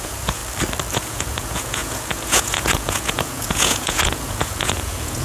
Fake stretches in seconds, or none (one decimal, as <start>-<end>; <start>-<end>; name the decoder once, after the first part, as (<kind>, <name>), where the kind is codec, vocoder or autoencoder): 0.0-0.4 (vocoder, Vocos); 0.9-5.2